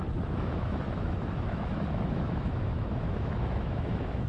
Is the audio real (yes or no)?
no